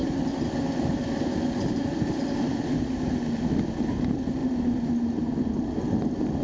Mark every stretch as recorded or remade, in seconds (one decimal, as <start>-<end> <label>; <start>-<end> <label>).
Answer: 0.0-6.4 recorded